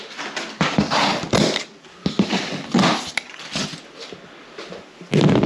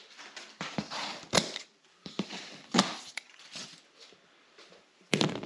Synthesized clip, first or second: second